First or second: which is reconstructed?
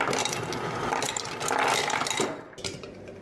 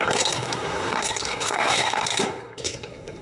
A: second